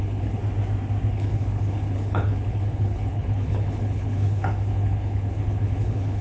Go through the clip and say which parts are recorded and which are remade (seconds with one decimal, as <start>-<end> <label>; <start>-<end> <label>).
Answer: 0.0-0.4 remade; 0.4-1.1 recorded; 1.1-6.2 remade